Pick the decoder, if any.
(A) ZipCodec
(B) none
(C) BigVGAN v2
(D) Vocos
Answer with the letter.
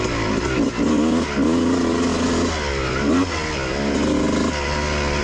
B